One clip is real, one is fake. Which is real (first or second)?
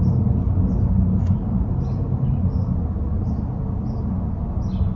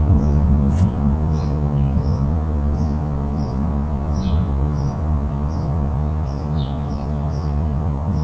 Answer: first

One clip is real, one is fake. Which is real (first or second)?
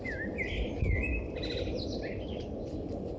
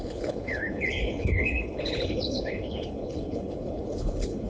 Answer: first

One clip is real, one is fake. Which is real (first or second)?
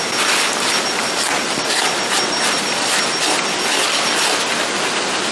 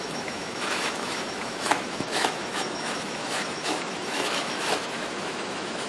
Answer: first